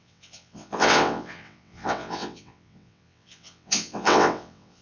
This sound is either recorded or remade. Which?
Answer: remade